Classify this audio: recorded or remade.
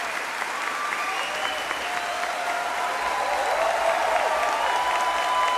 recorded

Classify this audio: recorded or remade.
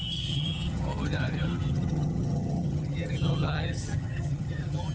remade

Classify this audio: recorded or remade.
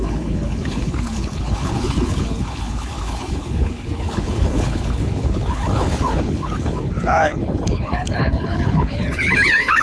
remade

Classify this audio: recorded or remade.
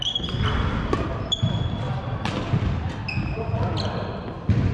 recorded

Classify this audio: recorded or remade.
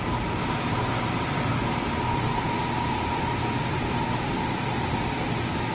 recorded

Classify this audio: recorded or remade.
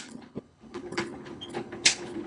remade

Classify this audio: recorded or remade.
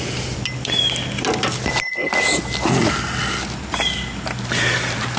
recorded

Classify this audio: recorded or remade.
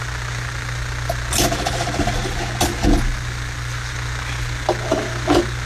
recorded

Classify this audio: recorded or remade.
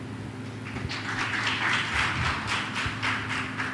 recorded